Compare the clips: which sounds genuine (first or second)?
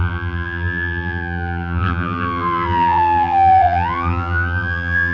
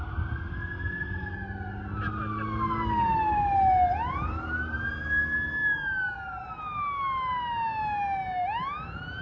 second